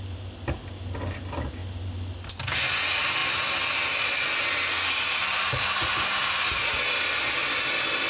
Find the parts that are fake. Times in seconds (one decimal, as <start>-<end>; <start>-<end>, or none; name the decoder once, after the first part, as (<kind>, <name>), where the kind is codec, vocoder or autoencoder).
none